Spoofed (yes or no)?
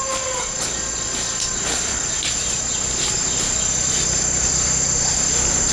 no